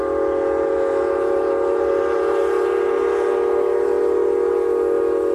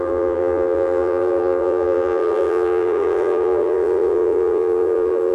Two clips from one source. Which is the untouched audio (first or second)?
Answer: first